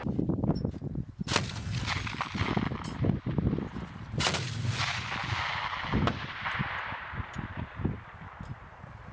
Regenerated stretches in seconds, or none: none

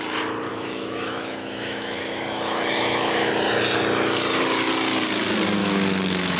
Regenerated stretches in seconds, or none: 0.5-3.3 (autoencoder, DAC-VAE); 5.6-6.4